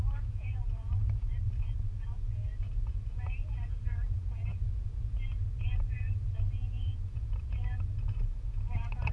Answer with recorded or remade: remade